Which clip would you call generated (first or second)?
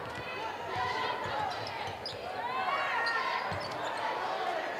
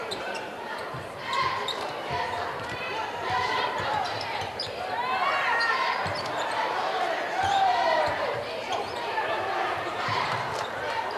second